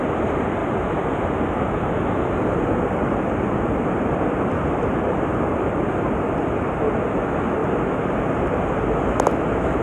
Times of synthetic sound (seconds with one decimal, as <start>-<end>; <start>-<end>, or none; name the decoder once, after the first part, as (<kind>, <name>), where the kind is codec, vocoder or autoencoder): 3.0-6.8 (vocoder, BigVGAN v2)